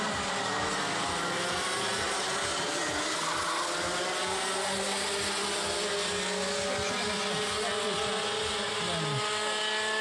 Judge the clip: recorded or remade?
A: recorded